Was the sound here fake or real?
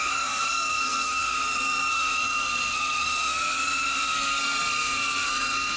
fake